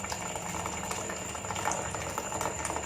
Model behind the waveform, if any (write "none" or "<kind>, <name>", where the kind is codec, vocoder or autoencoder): none